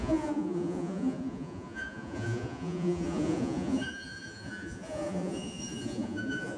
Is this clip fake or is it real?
fake